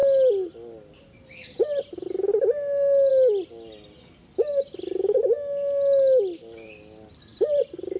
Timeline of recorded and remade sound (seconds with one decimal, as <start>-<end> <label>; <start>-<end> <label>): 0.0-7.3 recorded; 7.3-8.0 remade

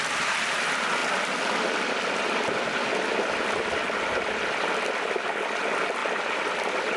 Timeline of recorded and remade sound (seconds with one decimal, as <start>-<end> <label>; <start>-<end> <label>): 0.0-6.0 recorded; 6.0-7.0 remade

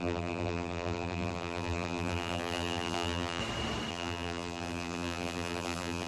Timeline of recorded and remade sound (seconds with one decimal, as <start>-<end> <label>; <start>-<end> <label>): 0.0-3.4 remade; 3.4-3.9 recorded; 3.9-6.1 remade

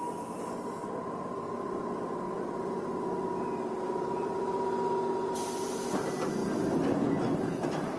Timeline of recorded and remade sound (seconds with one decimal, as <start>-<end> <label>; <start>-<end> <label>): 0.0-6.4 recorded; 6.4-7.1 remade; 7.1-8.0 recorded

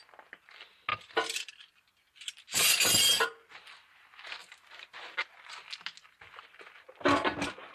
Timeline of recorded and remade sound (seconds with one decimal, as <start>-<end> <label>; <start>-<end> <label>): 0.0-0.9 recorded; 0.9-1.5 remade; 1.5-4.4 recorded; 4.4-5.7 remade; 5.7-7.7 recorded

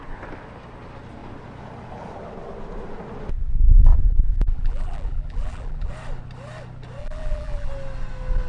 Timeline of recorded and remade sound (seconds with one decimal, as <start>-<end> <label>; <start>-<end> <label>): 0.0-3.9 recorded; 3.9-5.9 remade; 5.9-7.0 recorded; 7.0-7.7 remade; 7.7-8.5 recorded

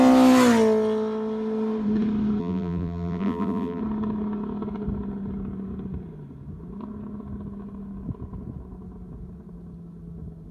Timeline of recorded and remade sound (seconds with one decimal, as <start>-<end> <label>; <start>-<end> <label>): 0.0-2.4 recorded; 2.4-3.8 remade; 3.8-10.5 recorded